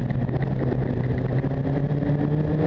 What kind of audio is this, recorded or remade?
recorded